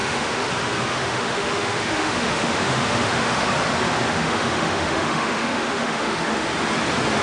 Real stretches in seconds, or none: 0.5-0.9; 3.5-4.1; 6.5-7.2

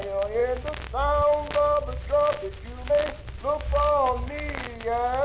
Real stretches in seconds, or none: 0.0-3.7; 4.6-5.2

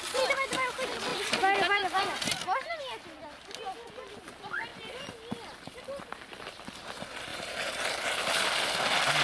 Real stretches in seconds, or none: 0.0-7.3; 7.9-9.2

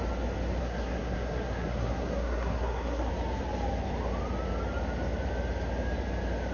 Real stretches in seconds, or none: 0.0-0.6; 3.1-6.5